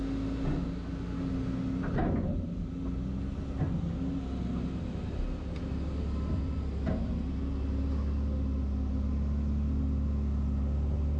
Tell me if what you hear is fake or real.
real